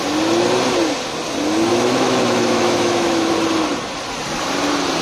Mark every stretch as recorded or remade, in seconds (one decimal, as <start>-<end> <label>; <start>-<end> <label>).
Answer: 0.0-1.7 recorded; 1.7-3.3 remade; 3.3-5.0 recorded